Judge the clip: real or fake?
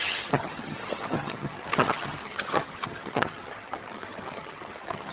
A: fake